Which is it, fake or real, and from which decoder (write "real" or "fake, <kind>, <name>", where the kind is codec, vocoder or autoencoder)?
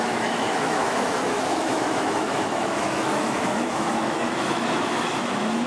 fake, autoencoder, DAC-VAE